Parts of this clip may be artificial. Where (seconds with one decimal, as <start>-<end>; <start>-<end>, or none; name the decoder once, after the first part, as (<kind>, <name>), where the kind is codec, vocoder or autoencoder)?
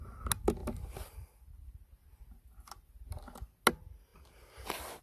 none